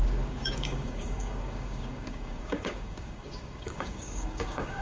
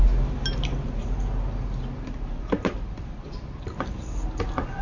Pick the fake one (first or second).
first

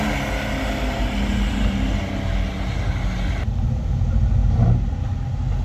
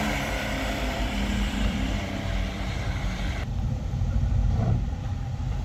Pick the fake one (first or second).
second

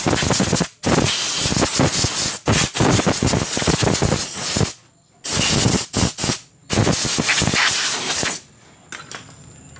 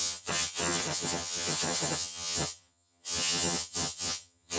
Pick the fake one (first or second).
second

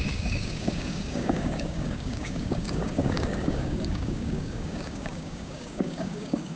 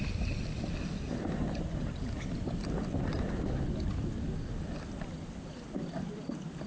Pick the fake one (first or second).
first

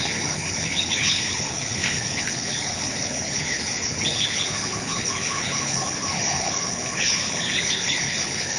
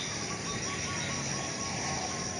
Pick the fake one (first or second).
first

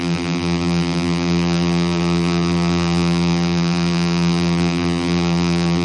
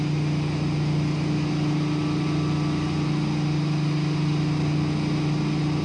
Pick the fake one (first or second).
first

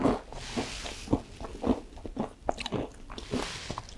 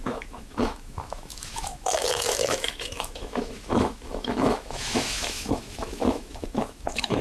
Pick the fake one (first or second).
second